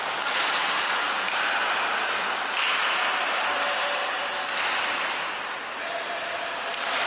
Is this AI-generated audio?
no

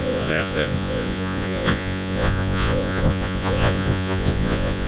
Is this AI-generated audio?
yes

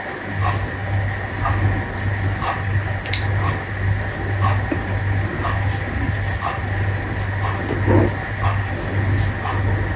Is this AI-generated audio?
no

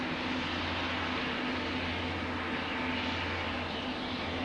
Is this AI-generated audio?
no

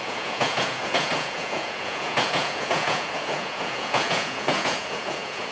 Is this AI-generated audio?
yes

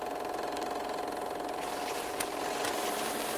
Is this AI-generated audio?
no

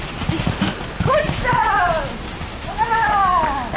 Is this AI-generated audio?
no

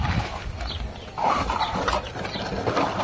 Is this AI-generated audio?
no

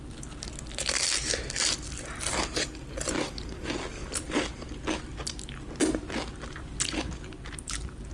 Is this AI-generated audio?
no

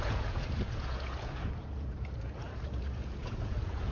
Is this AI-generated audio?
yes